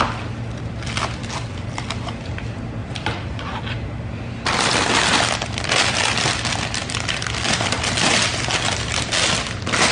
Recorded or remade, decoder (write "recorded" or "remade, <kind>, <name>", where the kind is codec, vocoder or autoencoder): recorded